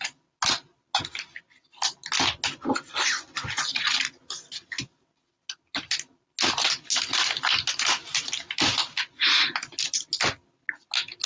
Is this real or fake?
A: real